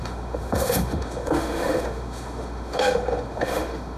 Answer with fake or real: fake